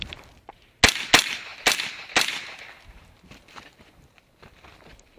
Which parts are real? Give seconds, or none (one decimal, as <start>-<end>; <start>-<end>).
0.0-1.5; 4.6-5.2